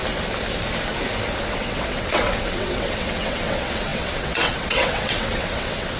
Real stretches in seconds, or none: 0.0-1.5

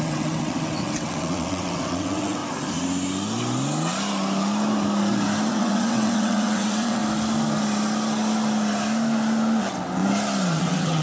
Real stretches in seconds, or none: 2.4-5.5; 7.0-9.6; 10.0-10.6

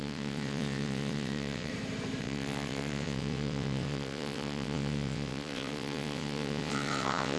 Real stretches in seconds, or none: 1.7-2.2

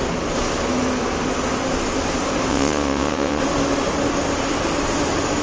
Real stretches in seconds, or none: 0.0-2.5; 3.4-5.4

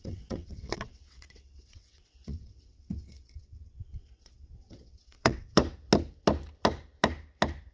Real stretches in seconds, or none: 5.6-7.7

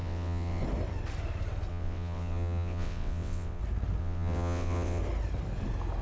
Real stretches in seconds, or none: 0.6-1.7; 3.6-4.0; 5.0-6.0

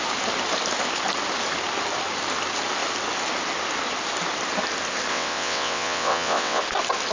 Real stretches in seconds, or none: 0.0-5.1; 6.6-7.1